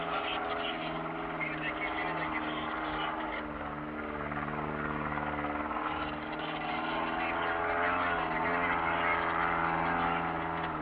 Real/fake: real